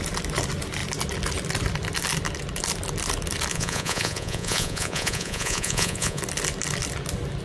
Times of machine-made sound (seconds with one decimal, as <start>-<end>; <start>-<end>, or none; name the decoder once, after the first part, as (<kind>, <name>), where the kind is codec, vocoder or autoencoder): 3.5-6.2 (vocoder, Vocos)